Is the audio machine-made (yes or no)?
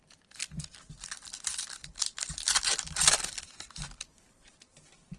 no